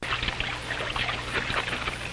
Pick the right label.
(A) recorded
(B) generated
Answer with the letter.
A